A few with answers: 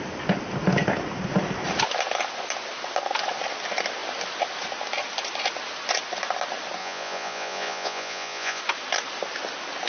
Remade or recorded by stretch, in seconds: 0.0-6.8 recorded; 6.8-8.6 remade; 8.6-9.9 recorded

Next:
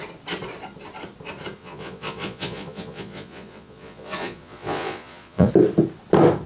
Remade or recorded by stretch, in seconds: 0.0-1.6 recorded; 1.6-5.5 remade; 5.5-6.5 recorded

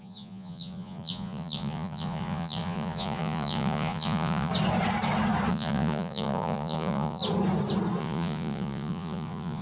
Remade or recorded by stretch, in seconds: 0.0-4.5 remade; 4.5-5.5 recorded; 5.5-7.2 remade; 7.2-8.0 recorded; 8.0-9.6 remade